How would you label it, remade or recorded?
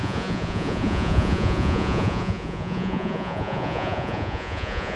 remade